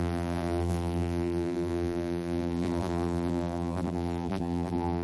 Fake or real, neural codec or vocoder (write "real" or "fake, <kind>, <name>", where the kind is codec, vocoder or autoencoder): fake, vocoder, BigVGAN v2